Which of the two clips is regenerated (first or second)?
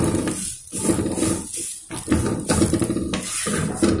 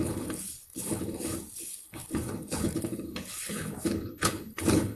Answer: second